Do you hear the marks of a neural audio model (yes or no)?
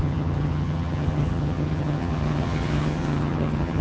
yes